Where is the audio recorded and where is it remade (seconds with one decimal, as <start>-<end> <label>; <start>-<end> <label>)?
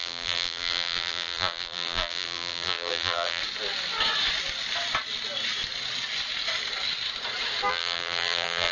0.0-3.4 remade; 3.4-7.7 recorded; 7.7-8.7 remade